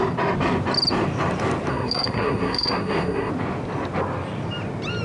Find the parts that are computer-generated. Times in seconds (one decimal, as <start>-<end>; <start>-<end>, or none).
1.7-3.3